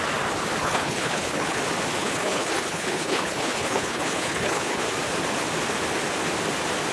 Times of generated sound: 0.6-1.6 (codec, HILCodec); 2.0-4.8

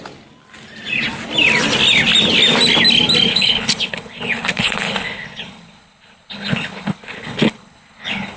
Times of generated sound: 3.3-8.4 (codec, HILCodec)

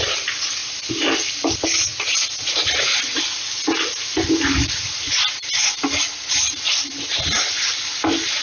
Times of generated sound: none

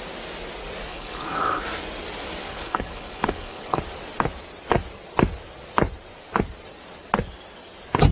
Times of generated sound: 0.9-1.6 (codec, HILCodec); 2.4-3.8

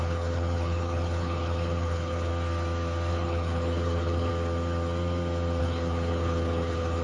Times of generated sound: 0.0-2.3 (codec, HILCodec); 3.1-4.3; 5.6-7.0